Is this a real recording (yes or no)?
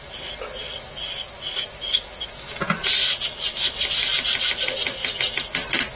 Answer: yes